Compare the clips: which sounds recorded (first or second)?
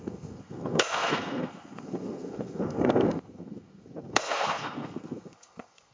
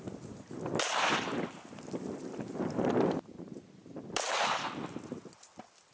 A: second